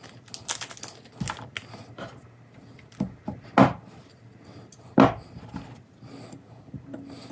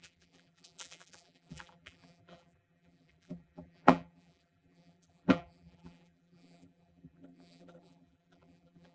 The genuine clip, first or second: first